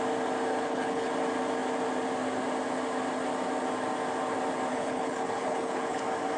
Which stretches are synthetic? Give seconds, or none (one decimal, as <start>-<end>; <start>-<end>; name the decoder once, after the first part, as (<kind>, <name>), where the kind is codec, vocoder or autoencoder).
0.5-1.1 (codec, HILCodec); 4.7-6.0